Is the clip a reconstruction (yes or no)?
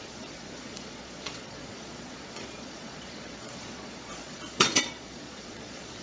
yes